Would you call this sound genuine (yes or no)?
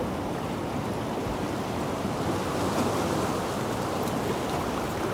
yes